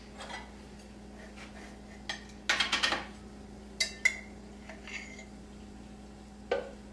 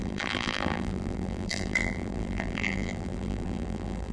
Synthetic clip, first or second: second